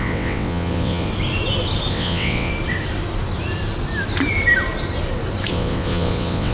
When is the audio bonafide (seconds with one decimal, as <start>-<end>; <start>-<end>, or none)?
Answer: 1.1-1.9; 2.5-5.5